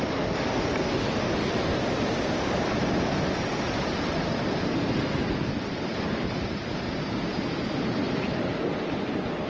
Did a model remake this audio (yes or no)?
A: no